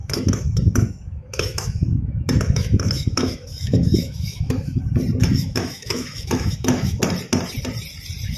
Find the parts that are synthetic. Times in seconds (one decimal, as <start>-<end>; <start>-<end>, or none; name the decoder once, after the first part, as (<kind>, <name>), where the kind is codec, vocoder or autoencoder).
0.0-4.8 (autoencoder, DAC-VAE); 5.2-7.0